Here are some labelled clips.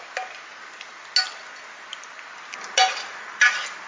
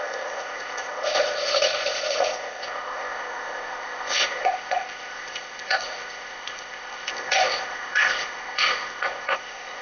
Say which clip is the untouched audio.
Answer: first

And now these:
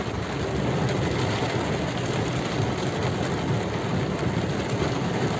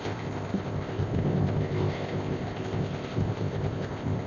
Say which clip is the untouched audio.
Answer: first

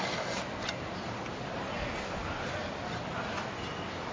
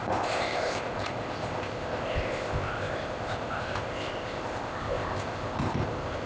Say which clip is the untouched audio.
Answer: first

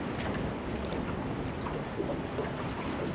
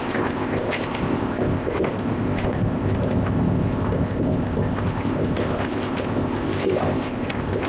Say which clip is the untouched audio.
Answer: first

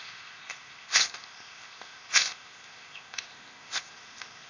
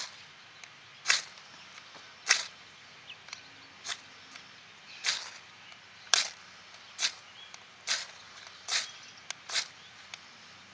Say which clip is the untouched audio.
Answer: second